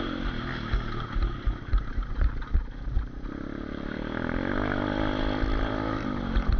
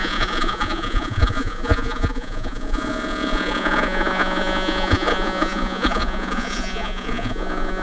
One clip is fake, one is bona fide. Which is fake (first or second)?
second